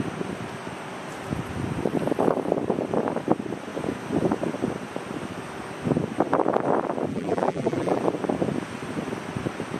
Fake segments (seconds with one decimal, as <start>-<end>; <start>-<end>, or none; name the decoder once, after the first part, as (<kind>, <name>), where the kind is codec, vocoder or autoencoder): 7.1-8.0 (vocoder, BigVGAN v2)